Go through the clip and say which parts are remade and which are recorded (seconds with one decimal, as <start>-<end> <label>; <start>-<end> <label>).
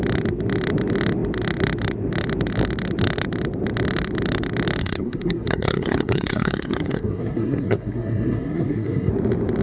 0.0-4.8 recorded; 4.8-9.1 remade; 9.1-9.6 recorded